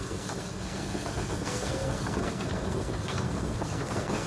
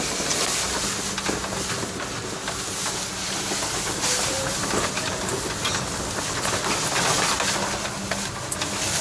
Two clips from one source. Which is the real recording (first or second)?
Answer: second